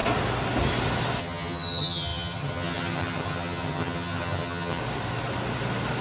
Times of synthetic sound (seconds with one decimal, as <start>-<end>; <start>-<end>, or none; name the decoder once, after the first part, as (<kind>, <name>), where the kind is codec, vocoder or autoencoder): 1.2-4.8 (vocoder, HiFi-GAN)